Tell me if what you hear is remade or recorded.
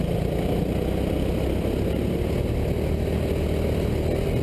recorded